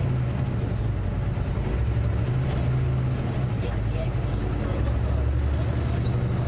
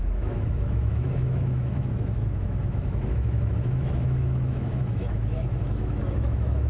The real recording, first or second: first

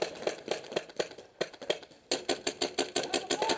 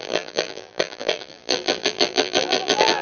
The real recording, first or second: first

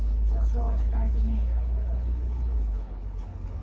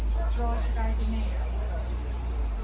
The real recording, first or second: second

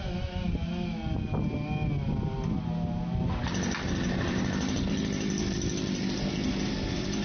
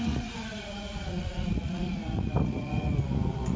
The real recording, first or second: first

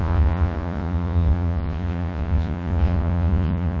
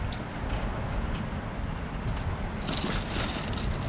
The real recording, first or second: second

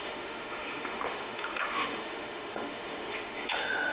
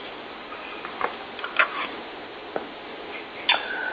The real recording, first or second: second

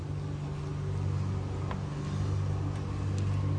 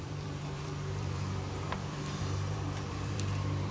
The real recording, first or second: first